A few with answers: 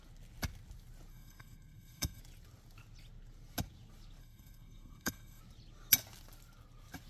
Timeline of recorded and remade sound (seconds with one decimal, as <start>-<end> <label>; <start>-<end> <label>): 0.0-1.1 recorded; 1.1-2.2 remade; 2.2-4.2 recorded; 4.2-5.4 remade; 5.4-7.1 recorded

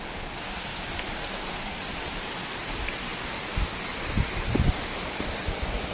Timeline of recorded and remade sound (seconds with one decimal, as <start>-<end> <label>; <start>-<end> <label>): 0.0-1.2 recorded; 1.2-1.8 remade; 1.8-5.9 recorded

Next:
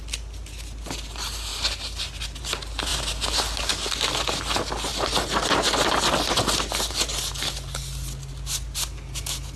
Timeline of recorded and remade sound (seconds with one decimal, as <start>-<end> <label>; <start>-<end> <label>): 0.0-9.6 recorded